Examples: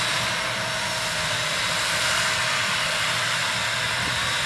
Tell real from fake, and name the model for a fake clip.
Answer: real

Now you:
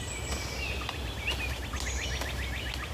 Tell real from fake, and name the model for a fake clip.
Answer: real